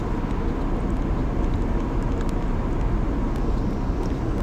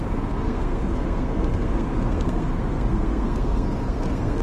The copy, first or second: second